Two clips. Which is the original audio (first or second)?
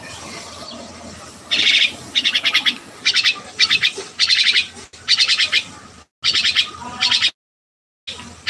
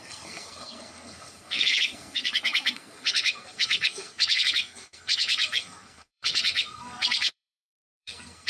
first